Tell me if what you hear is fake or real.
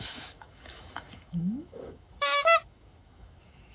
fake